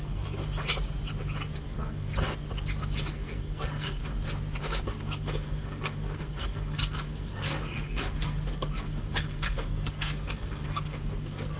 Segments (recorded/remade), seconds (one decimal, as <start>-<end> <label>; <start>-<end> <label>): 0.0-0.4 remade; 0.4-1.6 recorded; 1.6-2.1 remade; 2.1-3.1 recorded; 3.1-4.0 remade; 4.0-4.6 recorded; 4.6-11.6 remade